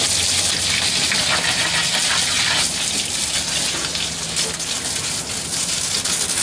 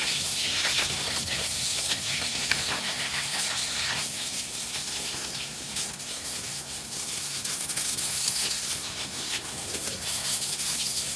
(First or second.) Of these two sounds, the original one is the first